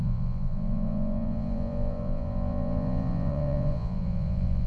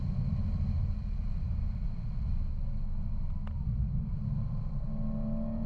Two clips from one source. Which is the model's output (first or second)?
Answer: first